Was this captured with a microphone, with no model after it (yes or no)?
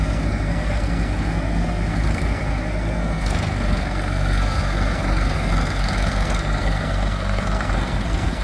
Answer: no